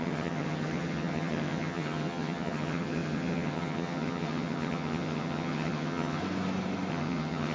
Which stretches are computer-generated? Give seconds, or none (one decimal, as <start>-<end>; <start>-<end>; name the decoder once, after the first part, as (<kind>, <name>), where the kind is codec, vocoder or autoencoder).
0.0-6.2 (vocoder, HiFi-GAN); 6.9-7.5